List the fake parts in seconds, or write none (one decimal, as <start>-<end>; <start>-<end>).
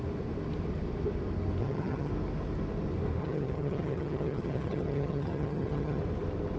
1.6-2.1; 3.2-6.0